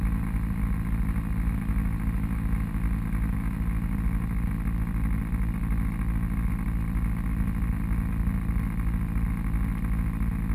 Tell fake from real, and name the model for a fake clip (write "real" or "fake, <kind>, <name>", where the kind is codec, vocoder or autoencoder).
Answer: real